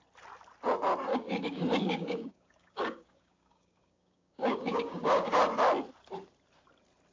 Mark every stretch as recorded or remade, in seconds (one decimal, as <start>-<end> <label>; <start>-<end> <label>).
0.0-1.1 recorded; 1.1-5.4 remade; 5.4-7.1 recorded